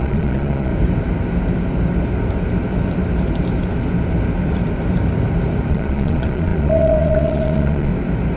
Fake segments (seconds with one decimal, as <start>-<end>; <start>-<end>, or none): 0.0-0.7; 5.7-7.9